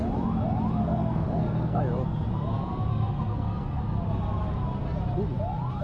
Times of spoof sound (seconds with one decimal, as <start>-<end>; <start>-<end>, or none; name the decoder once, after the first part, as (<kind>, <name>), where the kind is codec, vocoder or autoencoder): 0.8-1.8 (codec, SNAC); 2.9-3.8